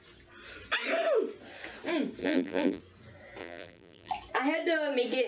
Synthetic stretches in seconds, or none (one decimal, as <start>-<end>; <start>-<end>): 2.2-2.8; 3.4-4.1